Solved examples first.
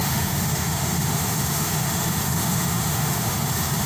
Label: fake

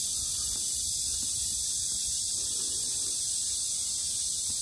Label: real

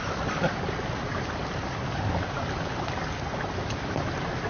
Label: real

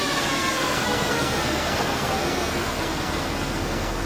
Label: fake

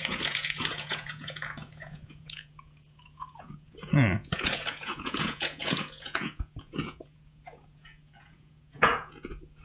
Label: fake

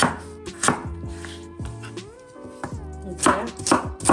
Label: real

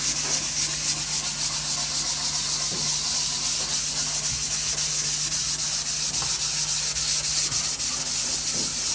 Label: real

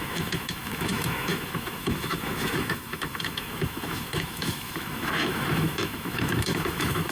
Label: fake